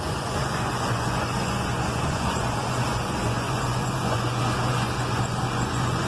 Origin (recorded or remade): remade